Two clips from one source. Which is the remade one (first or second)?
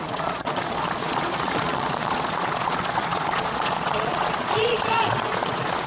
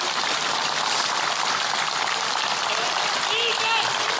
first